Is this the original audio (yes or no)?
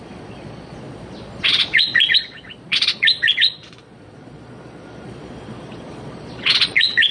no